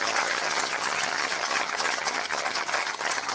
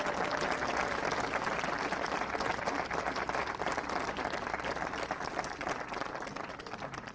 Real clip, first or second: second